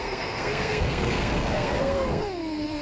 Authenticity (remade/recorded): remade